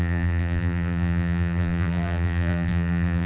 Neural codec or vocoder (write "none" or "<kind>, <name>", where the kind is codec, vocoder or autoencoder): vocoder, BigVGAN v2